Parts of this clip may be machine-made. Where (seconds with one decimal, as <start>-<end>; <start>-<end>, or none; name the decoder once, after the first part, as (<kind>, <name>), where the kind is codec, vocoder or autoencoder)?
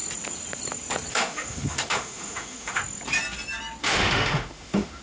1.1-2.8 (autoencoder, DAC-VAE); 3.8-5.0